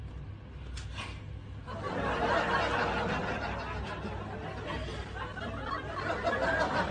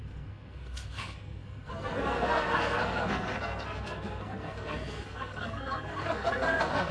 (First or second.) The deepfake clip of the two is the second